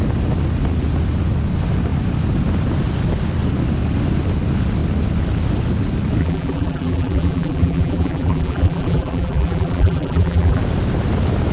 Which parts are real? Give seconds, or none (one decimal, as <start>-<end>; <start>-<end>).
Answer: 0.0-6.2; 10.6-11.5